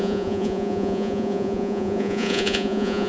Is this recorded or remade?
remade